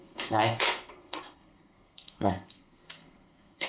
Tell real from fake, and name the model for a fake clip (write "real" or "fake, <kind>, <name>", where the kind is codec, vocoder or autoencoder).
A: fake, codec, SNAC